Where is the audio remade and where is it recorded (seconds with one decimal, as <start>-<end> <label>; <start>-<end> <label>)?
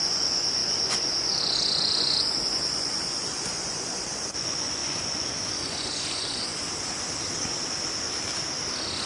0.0-6.6 remade; 6.6-9.1 recorded